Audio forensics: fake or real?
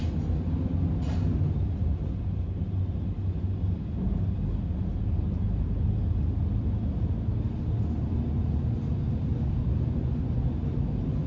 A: real